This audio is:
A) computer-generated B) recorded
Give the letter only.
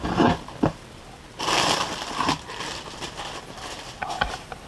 B